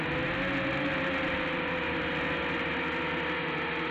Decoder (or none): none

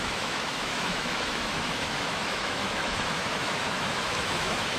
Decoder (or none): autoencoder, DAC-VAE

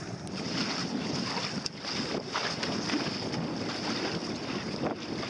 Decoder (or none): none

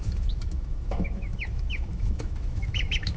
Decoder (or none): autoencoder, DAC-VAE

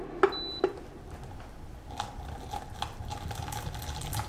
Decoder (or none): none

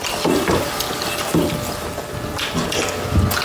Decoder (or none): none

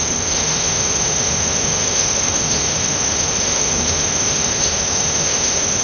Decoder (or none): autoencoder, DAC-VAE